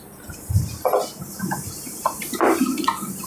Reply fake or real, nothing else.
fake